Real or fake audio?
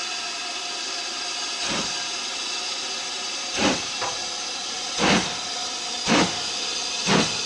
real